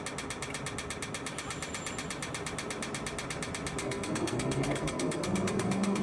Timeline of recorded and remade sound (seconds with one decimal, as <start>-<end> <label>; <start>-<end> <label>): 0.0-3.8 recorded; 3.8-6.0 remade